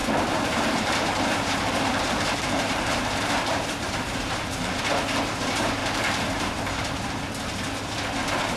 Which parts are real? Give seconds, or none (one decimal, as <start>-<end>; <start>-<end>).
4.8-5.8; 6.7-8.6